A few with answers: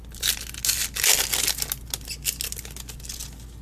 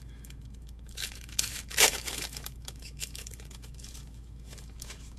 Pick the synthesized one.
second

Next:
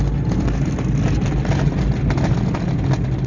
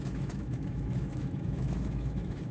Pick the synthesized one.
second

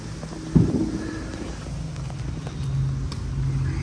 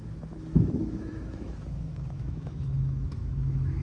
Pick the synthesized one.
second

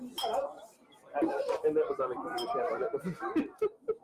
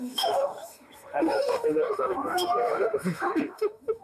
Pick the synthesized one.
second